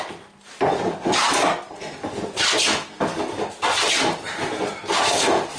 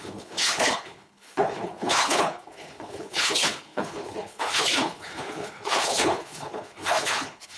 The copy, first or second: second